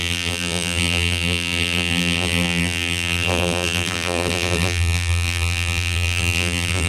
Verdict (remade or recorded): remade